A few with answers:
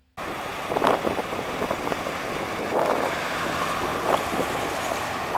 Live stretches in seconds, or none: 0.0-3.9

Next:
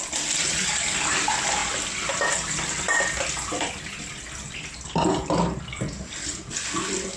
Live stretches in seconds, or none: 0.0-1.6; 2.1-7.2

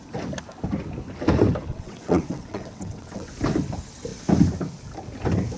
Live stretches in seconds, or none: 0.0-1.7; 3.3-5.6

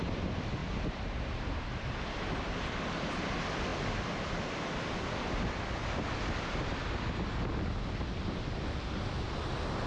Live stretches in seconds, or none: 0.0-0.6; 1.1-9.9

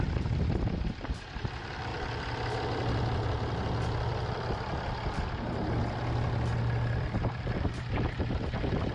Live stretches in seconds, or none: 1.9-7.0